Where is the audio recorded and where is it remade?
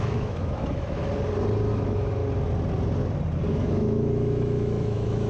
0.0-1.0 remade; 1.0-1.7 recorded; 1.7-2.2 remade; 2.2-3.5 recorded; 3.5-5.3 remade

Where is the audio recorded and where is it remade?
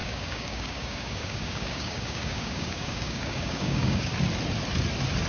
0.0-4.1 remade; 4.1-5.3 recorded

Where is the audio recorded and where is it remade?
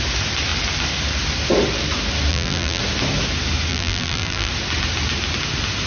0.0-2.3 recorded; 2.3-2.8 remade; 2.8-3.7 recorded; 3.7-4.5 remade; 4.5-5.9 recorded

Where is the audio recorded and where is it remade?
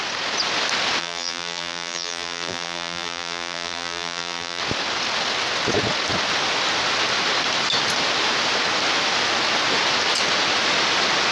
0.0-1.0 recorded; 1.0-4.6 remade; 4.6-11.3 recorded